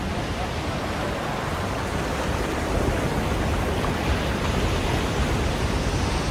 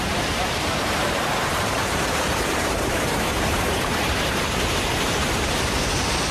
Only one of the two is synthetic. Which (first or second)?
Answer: second